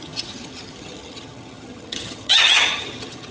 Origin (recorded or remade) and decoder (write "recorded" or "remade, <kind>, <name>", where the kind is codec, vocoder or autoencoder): remade, vocoder, HiFi-GAN